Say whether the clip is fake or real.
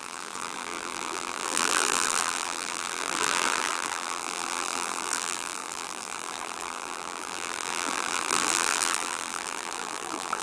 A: fake